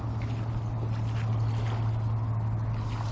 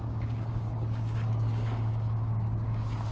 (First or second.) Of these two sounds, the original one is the first